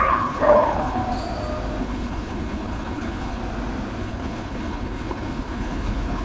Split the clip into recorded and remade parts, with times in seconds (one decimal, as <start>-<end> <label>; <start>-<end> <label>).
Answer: 0.0-1.0 remade; 1.0-1.8 recorded; 1.8-3.4 remade; 3.4-4.0 recorded; 4.0-6.2 remade